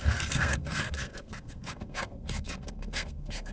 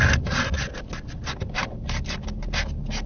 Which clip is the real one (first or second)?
second